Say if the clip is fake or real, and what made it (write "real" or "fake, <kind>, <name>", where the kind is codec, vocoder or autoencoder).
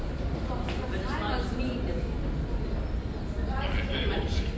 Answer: real